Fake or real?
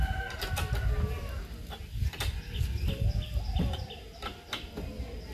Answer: real